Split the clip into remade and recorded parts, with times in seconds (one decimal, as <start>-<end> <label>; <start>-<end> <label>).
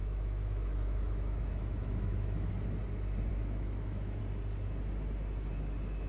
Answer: 0.0-2.5 remade; 2.5-3.3 recorded; 3.3-4.2 remade; 4.2-6.1 recorded